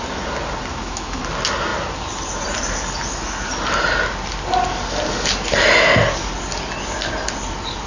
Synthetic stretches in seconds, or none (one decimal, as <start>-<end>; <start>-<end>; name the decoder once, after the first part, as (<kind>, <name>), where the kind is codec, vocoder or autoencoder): 0.7-1.2 (autoencoder, DAC-VAE)